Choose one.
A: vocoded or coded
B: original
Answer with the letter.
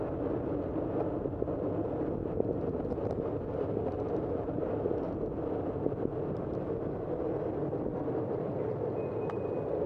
B